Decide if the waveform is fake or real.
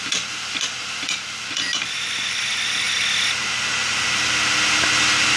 real